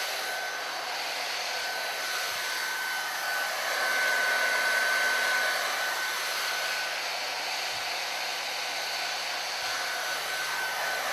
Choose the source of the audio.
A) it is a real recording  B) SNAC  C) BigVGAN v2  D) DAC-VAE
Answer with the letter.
A